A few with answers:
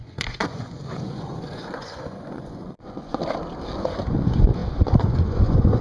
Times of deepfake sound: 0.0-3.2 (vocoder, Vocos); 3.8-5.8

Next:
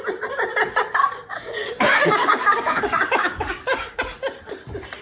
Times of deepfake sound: 1.0-4.0 (codec, DAC)

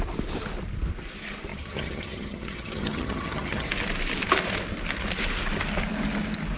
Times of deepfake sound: 1.5-3.7 (vocoder, HiFi-GAN)

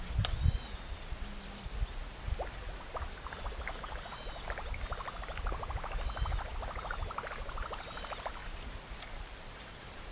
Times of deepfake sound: none

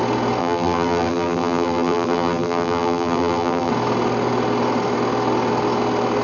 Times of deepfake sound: 0.4-3.7 (vocoder, BigVGAN v2)

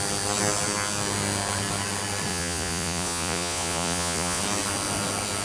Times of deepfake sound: 2.3-4.4 (vocoder, Vocos)